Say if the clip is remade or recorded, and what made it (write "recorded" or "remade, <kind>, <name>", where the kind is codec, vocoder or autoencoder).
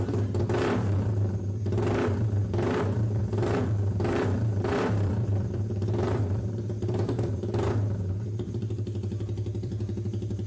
remade, vocoder, BigVGAN v2